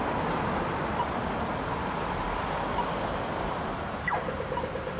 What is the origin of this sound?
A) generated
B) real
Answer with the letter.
B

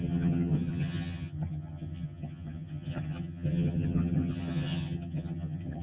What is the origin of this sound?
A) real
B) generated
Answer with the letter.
B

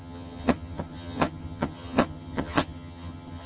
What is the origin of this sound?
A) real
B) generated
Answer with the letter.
B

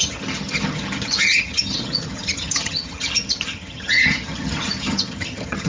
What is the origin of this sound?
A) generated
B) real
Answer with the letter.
A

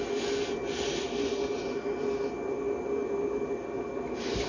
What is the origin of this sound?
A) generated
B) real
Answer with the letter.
B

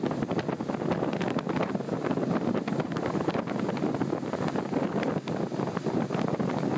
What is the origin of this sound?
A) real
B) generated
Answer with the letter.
A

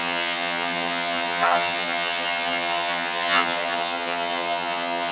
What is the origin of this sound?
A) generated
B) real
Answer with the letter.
A